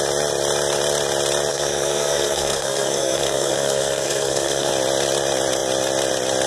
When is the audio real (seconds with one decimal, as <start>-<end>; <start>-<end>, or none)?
0.0-1.5; 4.7-6.5